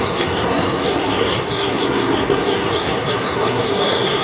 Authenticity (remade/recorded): remade